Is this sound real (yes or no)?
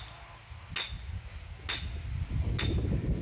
yes